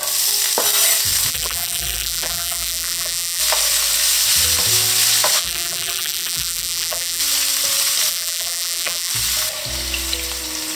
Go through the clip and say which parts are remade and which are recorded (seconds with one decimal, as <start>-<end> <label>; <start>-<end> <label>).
0.0-1.3 recorded; 1.3-3.4 remade; 3.4-5.4 recorded; 5.4-7.2 remade; 7.2-8.1 recorded; 8.1-9.1 remade; 9.1-10.8 recorded